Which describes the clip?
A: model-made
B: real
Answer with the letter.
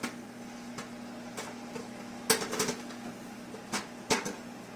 B